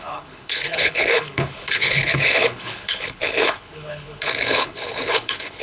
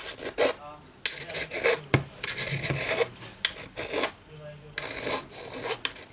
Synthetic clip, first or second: first